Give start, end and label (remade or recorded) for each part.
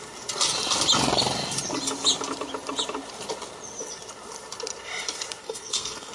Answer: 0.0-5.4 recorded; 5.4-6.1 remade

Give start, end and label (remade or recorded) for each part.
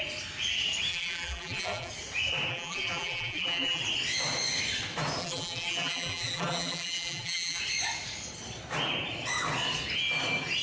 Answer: 0.0-0.9 recorded; 0.9-1.9 remade; 1.9-2.5 recorded; 2.5-3.8 remade; 3.8-5.2 recorded; 5.2-7.6 remade; 7.6-10.6 recorded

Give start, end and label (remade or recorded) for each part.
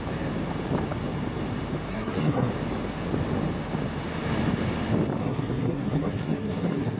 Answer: 0.0-1.9 recorded; 1.9-2.5 remade; 2.5-5.2 recorded; 5.2-7.0 remade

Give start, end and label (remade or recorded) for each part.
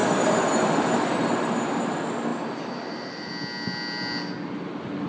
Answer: 0.0-1.2 remade; 1.2-2.3 recorded; 2.3-3.3 remade; 3.3-5.1 recorded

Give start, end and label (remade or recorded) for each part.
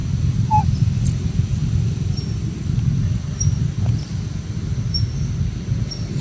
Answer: 0.0-6.2 recorded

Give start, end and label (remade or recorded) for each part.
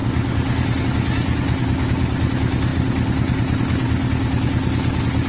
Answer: 0.0-5.3 recorded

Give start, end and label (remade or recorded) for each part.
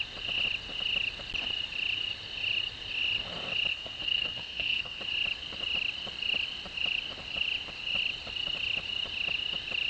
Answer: 0.0-3.7 recorded; 3.7-5.0 remade; 5.0-9.9 recorded